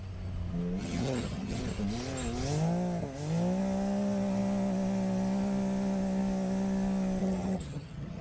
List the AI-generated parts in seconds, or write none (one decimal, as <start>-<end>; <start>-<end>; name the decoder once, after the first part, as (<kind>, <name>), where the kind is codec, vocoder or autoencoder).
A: 0.8-1.6 (vocoder, HiFi-GAN); 7.2-8.2